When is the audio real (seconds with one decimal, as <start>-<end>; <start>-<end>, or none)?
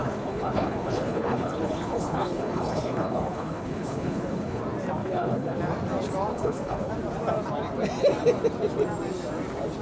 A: 4.6-5.0; 5.6-6.3; 6.9-9.8